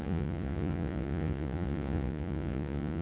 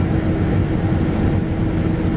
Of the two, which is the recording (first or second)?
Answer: second